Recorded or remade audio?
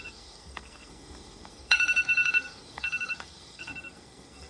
remade